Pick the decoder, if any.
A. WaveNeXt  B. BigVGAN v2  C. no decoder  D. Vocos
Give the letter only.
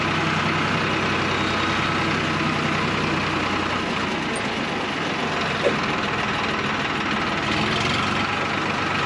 C